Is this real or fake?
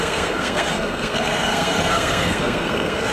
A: fake